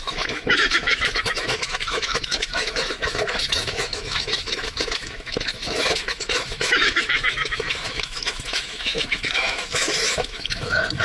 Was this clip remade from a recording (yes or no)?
yes